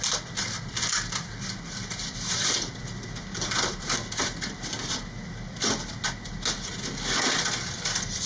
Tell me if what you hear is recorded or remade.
recorded